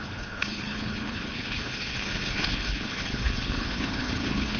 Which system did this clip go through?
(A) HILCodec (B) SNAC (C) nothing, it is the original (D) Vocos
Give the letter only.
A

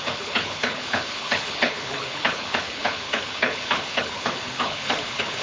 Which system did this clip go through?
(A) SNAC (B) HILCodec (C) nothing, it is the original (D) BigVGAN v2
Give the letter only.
B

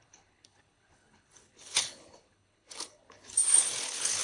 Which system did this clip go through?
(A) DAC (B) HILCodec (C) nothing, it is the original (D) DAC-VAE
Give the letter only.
B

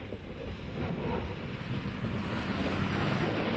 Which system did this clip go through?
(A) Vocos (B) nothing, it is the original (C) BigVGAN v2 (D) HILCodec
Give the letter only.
B